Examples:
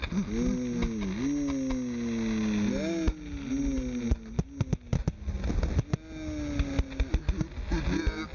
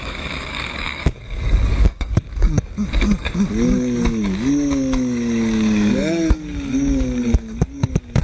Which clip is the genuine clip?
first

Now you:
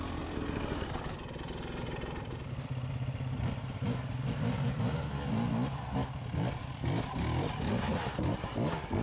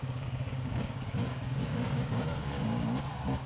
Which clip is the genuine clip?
first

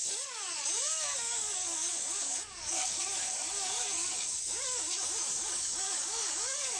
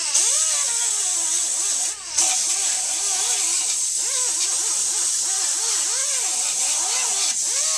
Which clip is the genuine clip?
second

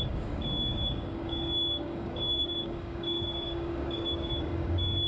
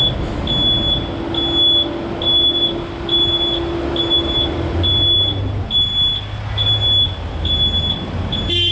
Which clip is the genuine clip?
second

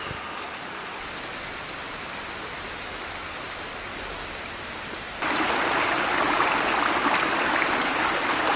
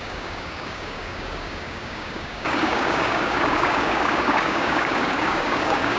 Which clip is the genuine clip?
first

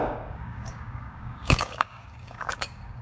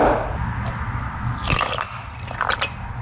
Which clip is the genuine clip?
second